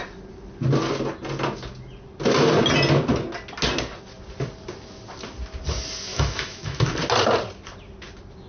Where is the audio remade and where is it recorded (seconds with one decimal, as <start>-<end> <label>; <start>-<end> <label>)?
0.0-6.1 recorded; 6.1-6.9 remade; 6.9-8.5 recorded